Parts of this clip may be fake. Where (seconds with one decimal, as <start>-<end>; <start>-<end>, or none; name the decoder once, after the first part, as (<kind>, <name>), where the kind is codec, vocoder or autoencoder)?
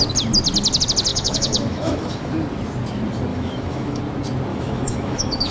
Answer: 1.1-2.3 (autoencoder, DAC-VAE); 3.3-4.0; 4.5-5.5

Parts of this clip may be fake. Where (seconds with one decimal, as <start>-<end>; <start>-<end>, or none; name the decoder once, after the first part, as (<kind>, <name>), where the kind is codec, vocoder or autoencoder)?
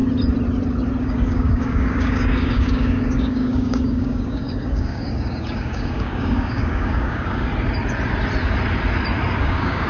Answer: 1.0-7.5 (codec, DAC); 9.4-9.9